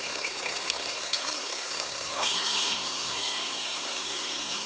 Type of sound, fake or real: fake